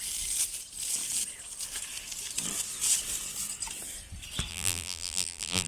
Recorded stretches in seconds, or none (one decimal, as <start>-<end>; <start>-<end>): 0.0-4.5